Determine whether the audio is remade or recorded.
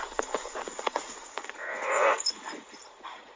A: remade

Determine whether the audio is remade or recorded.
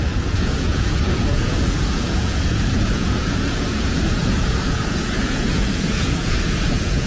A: remade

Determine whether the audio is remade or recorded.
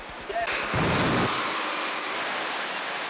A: recorded